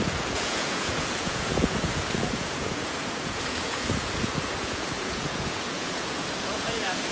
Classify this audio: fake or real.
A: fake